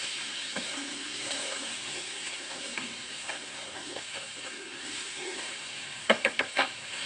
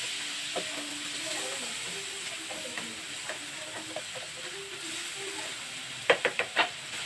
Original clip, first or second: second